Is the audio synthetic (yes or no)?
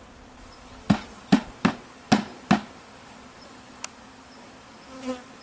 no